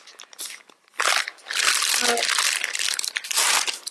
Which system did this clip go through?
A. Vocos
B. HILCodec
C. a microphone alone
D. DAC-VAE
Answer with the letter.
C